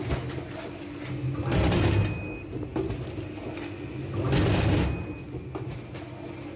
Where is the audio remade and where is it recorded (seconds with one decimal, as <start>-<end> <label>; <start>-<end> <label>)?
0.0-6.6 recorded